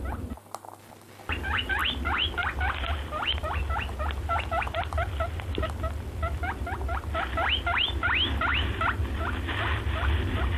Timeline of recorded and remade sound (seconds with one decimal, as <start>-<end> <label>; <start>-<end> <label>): 0.0-10.6 recorded